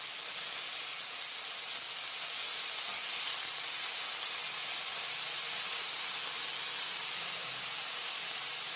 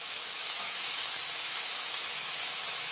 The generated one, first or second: second